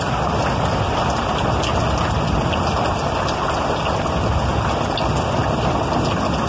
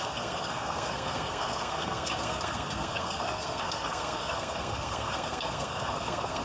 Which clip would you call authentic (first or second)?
first